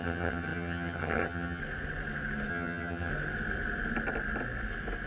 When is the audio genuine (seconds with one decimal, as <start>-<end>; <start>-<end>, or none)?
1.6-2.5; 3.1-5.1